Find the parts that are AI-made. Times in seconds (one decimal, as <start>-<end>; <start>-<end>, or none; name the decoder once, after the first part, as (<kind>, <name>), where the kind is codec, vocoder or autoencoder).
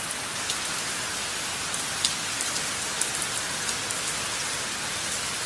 none